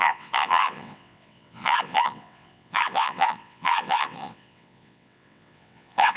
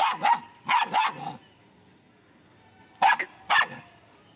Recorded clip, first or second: second